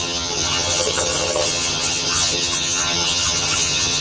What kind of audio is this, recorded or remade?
remade